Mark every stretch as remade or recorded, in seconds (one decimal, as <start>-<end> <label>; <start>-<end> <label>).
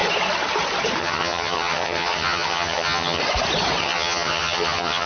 0.0-1.0 recorded; 1.0-3.2 remade; 3.2-3.8 recorded; 3.8-5.1 remade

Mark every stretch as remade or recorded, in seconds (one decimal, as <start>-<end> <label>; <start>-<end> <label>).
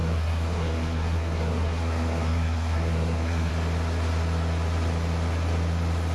0.0-3.5 remade; 3.5-6.1 recorded